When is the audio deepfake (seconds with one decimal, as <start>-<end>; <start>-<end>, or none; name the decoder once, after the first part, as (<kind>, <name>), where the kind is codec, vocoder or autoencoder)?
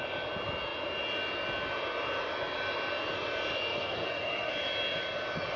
3.7-4.5 (codec, SNAC)